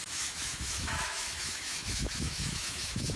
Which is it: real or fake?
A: fake